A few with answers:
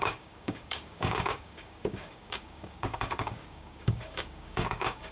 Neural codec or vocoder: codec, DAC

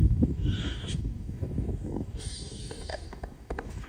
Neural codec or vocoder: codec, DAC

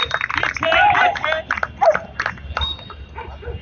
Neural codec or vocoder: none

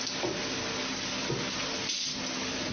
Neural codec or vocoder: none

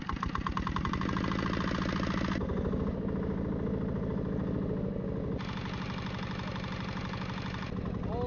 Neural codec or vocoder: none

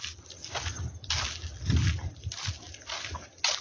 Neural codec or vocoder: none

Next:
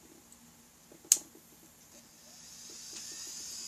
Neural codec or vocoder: none